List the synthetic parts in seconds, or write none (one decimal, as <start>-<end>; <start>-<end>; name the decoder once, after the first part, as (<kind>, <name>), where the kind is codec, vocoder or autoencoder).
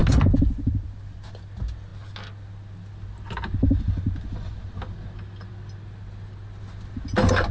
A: none